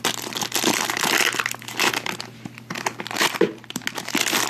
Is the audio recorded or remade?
recorded